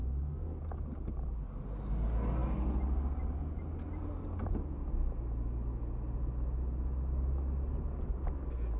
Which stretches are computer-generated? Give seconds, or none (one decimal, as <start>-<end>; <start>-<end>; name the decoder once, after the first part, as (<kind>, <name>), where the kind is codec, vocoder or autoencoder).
0.0-0.6 (codec, SNAC)